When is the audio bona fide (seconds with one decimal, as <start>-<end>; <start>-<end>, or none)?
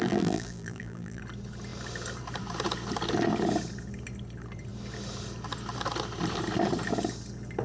1.2-7.6